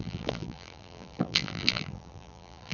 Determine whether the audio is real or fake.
fake